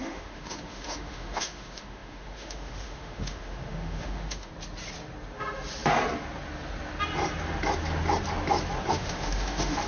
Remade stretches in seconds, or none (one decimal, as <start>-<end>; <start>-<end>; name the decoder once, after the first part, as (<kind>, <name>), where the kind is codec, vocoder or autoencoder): 0.0-4.5 (autoencoder, DAC-VAE); 8.9-9.9